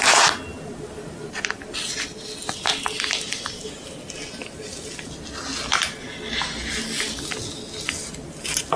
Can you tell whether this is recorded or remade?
recorded